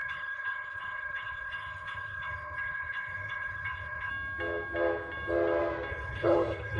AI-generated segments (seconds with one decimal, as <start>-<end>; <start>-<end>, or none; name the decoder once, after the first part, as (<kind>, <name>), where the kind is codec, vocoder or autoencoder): 0.0-4.1 (codec, HILCodec); 5.9-6.8